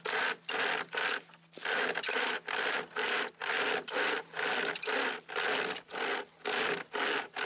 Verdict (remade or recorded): recorded